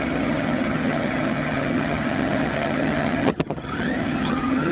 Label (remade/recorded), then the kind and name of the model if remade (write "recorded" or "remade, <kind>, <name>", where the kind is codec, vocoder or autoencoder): remade, vocoder, HiFi-GAN